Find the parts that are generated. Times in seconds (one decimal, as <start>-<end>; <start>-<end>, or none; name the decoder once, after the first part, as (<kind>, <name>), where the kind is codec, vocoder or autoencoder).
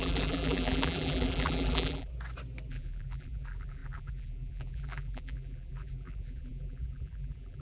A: 0.0-2.1 (vocoder, BigVGAN v2); 2.7-7.6